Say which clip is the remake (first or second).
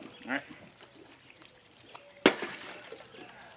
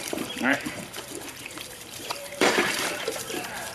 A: second